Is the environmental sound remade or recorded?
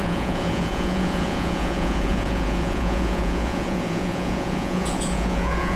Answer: remade